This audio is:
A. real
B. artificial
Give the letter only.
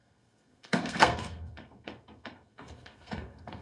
B